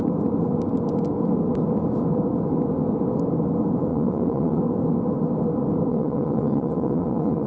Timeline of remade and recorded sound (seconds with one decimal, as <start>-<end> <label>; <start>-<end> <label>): 0.0-3.9 recorded; 3.9-4.6 remade; 4.6-5.9 recorded; 5.9-7.5 remade